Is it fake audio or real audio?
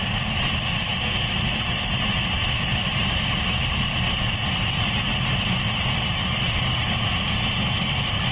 real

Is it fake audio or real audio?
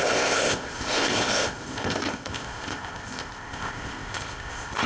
fake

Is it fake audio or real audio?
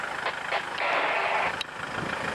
real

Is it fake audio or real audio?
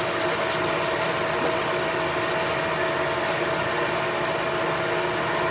real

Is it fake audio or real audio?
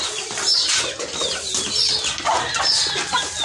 real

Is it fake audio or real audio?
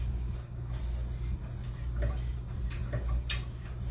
real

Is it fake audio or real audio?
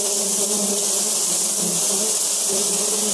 real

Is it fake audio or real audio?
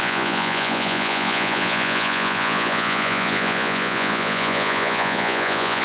fake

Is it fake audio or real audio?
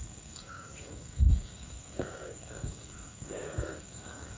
fake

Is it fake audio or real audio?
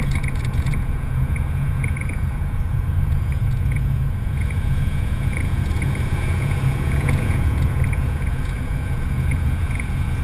fake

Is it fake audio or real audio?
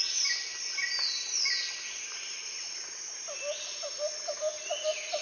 real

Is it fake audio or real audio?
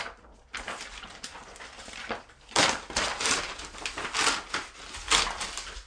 real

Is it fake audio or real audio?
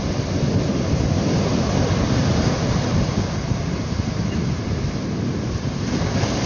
real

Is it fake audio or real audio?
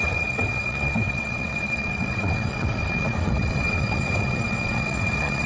fake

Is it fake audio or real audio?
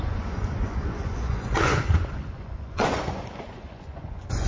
fake